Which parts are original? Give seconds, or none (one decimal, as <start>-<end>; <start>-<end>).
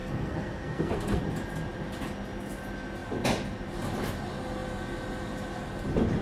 1.2-6.2